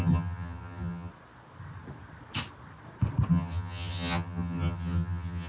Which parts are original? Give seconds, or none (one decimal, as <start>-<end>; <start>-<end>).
1.1-3.3